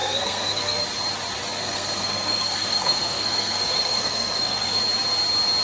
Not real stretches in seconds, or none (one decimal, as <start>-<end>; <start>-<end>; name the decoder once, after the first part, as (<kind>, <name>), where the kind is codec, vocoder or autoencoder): 0.0-0.8 (codec, SNAC); 1.6-4.8